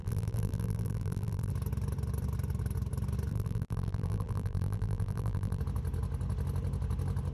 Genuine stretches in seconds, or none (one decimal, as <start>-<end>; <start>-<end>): 1.5-3.3; 5.6-7.3